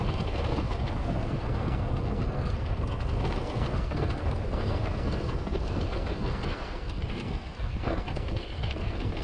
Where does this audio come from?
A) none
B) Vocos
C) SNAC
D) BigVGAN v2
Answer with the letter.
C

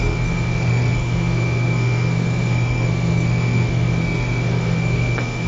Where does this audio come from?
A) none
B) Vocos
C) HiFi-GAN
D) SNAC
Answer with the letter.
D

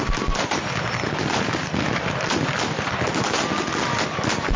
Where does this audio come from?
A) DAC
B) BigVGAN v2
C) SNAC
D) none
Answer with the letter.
D